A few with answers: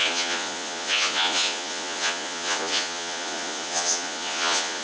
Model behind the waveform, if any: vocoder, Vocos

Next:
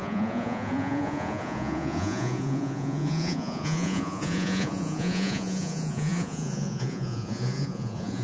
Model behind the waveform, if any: vocoder, Vocos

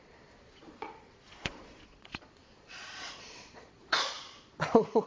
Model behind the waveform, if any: vocoder, Vocos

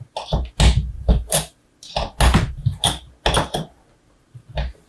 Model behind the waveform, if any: none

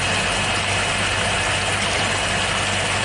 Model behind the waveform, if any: none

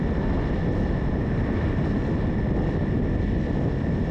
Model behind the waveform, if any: none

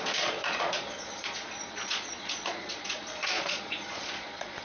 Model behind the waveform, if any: vocoder, Vocos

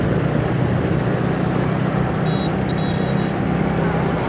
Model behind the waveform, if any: none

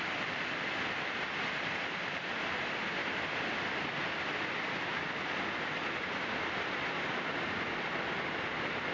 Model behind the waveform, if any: none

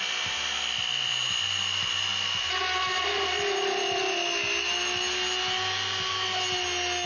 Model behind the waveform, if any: none